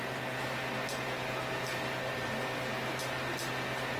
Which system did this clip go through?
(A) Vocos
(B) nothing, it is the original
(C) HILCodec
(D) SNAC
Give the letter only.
B